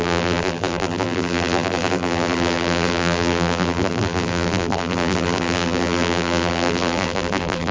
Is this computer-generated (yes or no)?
yes